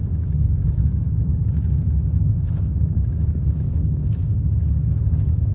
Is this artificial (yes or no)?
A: yes